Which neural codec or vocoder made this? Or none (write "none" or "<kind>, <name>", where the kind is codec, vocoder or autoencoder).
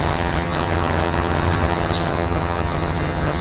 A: vocoder, HiFi-GAN